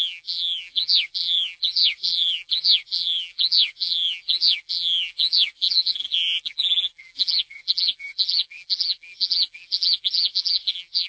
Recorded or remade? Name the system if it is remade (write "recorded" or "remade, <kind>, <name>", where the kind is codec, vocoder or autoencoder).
remade, vocoder, BigVGAN v2